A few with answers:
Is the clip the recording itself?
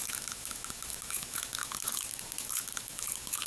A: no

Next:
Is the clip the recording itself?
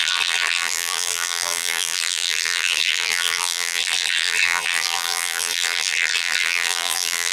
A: no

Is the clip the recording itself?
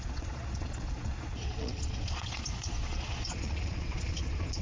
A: no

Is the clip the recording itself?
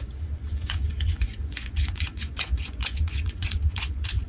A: no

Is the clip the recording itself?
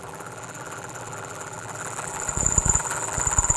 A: no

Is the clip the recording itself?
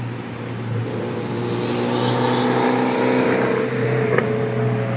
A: yes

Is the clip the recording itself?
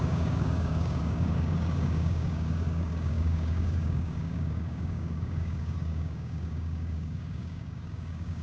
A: no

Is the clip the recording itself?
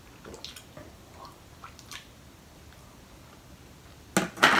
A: yes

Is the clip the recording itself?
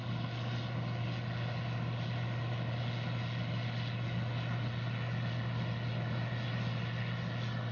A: yes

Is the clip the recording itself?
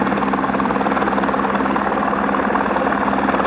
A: yes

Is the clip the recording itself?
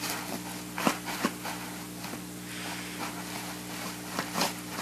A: yes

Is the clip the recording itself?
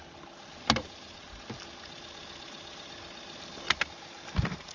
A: yes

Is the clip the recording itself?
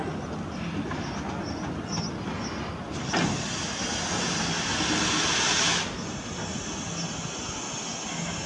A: yes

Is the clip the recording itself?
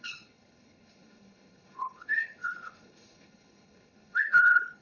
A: no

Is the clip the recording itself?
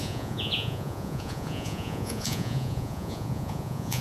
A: no